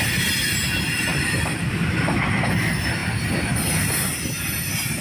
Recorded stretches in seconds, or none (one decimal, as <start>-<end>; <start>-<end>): 0.0-1.1; 2.3-5.0